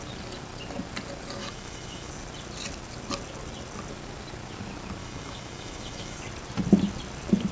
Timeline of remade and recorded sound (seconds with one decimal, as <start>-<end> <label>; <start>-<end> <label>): 0.0-1.4 recorded; 1.4-2.1 remade; 2.1-5.0 recorded; 5.0-6.2 remade; 6.2-7.5 recorded